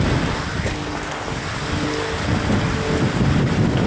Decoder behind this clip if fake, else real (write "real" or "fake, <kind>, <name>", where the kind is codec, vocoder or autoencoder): real